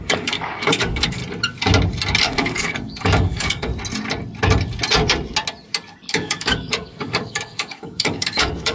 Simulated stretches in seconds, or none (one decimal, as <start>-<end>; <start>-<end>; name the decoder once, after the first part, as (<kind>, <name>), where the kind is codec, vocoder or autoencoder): 0.0-1.2 (codec, DAC); 2.2-3.7; 6.1-8.7